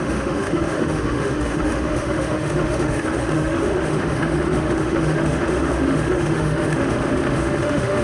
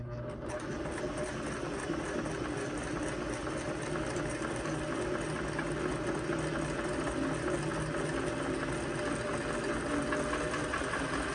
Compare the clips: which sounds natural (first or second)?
second